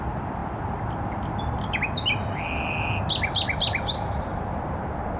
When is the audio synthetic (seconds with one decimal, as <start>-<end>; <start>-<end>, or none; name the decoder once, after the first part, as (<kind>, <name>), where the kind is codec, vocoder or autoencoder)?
none